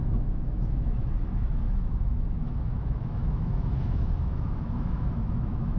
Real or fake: fake